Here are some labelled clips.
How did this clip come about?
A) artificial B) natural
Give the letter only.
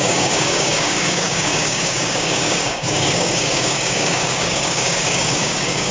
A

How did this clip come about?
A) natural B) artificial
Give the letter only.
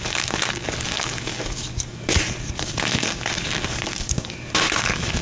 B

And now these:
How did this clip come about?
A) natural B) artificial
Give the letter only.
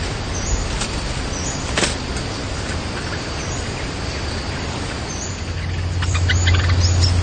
A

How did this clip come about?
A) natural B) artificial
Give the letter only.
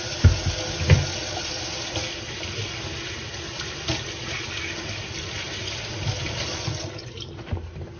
A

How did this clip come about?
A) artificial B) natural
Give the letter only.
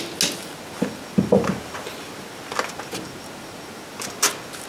B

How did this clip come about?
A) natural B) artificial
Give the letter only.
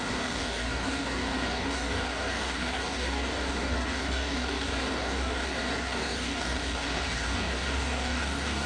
B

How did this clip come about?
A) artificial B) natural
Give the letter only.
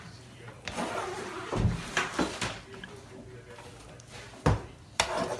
B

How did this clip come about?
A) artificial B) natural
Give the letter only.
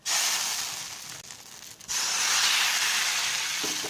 B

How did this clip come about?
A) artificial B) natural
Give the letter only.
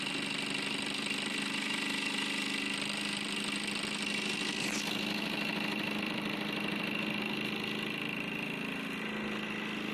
B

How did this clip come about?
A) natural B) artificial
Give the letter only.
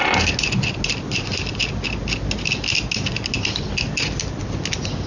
A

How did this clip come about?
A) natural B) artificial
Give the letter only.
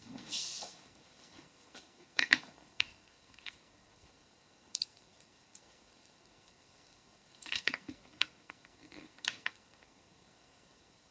B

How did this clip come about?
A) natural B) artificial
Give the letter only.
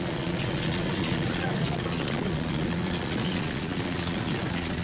B